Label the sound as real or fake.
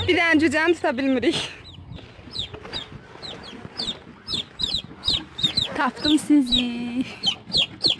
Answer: real